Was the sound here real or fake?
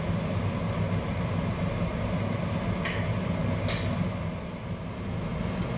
real